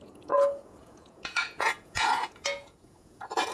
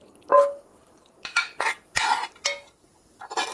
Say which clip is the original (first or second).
second